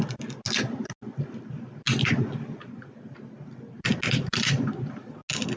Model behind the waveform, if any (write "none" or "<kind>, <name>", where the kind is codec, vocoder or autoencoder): none